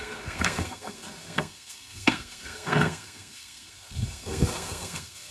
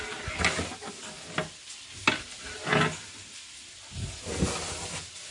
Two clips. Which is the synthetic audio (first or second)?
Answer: first